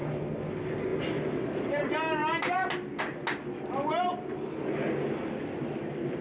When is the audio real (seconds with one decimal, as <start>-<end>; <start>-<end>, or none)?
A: 0.0-6.2